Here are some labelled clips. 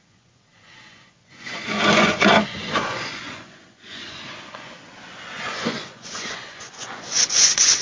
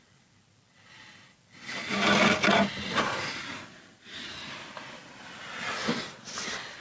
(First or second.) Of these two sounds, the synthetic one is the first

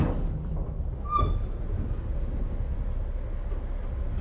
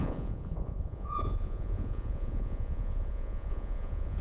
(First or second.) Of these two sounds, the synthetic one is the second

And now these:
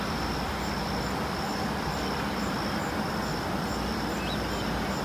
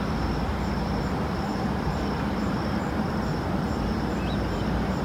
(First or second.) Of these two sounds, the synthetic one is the second